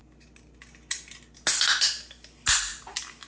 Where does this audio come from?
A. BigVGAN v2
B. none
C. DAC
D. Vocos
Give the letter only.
B